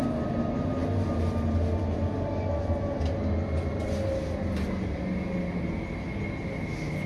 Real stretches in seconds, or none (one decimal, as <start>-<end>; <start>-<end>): 0.0-7.1